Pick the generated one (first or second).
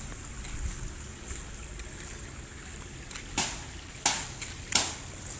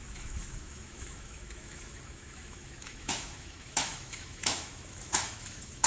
second